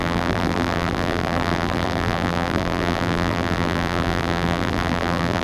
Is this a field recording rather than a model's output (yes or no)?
no